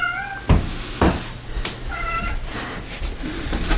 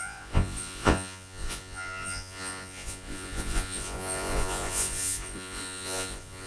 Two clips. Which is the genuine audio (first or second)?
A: first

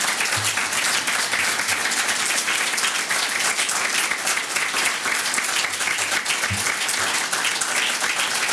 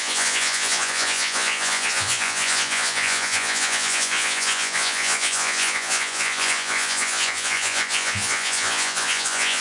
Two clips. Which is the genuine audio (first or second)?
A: first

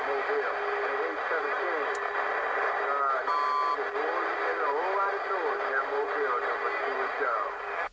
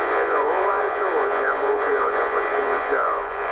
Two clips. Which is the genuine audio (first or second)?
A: first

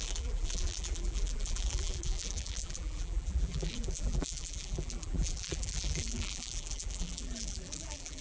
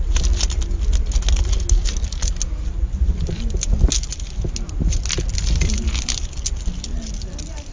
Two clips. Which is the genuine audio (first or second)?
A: second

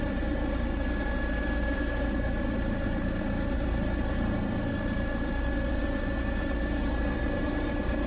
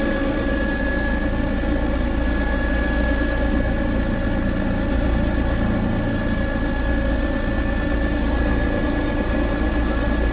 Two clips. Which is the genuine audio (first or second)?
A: second